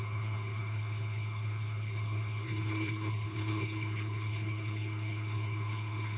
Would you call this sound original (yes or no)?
no